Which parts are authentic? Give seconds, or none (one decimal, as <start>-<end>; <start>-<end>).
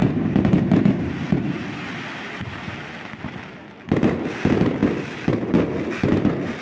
1.1-6.6